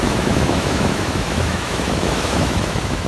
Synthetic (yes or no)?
yes